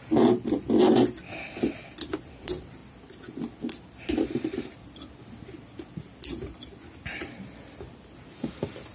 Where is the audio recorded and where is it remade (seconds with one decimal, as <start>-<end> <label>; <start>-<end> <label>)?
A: 0.0-8.9 recorded